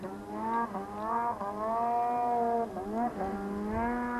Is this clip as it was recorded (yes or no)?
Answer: yes